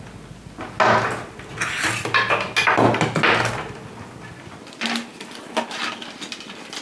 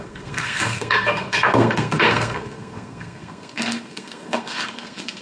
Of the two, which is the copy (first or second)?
second